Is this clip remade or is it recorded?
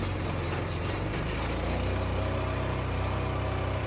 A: remade